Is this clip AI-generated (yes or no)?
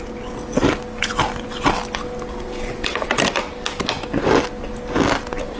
no